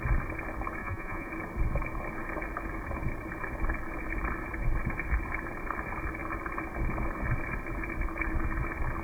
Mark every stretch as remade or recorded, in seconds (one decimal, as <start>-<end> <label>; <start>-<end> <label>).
0.0-0.8 recorded; 0.8-1.3 remade; 1.3-9.0 recorded